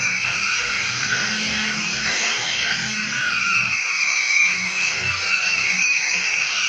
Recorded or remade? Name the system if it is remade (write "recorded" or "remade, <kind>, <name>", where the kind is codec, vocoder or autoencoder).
remade, codec, DAC